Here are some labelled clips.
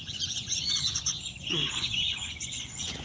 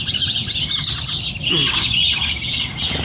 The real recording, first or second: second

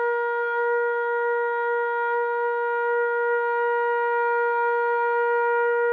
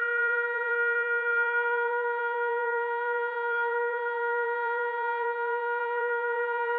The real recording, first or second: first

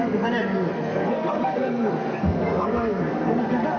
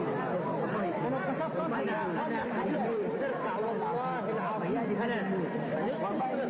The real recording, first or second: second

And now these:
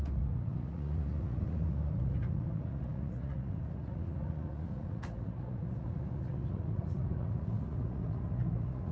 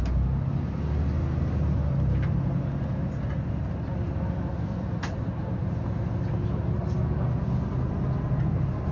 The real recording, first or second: second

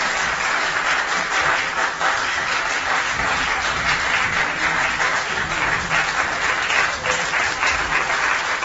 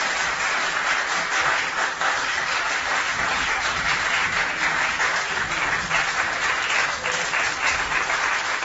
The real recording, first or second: first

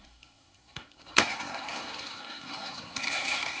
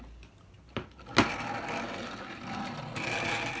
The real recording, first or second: second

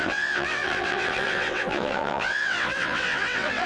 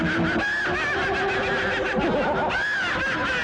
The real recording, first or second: second